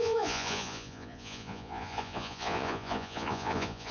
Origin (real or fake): fake